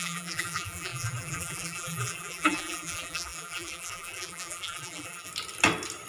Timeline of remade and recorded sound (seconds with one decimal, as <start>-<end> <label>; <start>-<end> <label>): 0.0-5.3 remade; 5.3-6.1 recorded